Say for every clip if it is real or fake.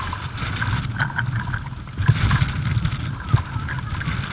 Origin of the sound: real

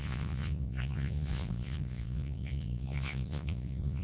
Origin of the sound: fake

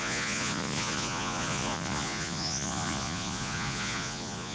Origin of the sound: fake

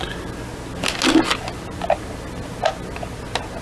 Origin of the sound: real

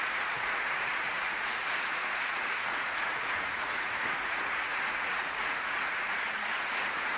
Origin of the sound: fake